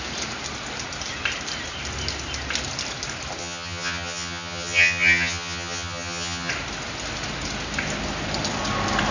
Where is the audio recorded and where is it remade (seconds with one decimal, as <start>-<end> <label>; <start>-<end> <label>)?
0.0-3.4 recorded; 3.4-6.5 remade; 6.5-9.1 recorded